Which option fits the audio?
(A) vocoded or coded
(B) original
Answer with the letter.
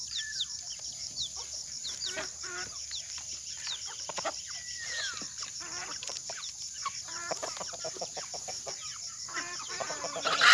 A